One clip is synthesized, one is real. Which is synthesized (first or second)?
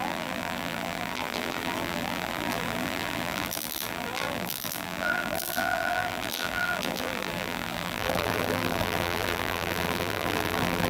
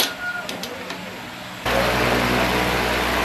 first